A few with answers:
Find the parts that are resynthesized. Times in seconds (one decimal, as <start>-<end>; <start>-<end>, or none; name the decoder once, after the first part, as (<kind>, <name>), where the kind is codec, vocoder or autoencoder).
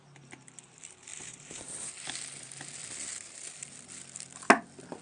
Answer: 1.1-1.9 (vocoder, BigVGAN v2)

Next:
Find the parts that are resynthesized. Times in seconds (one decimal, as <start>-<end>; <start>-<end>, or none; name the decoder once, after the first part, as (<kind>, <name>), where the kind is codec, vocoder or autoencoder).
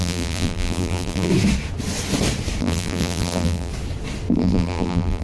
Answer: 0.0-1.3 (vocoder, BigVGAN v2); 2.6-3.7; 4.3-5.2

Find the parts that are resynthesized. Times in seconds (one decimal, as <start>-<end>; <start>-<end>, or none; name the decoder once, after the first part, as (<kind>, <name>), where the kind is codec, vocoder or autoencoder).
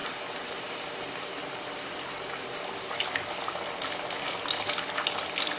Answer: 0.0-1.0 (vocoder, BigVGAN v2)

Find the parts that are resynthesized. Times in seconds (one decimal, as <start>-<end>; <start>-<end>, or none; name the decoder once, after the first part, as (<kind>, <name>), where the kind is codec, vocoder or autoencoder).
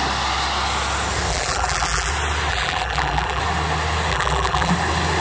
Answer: 1.3-2.1 (vocoder, BigVGAN v2); 2.5-3.4; 4.1-4.7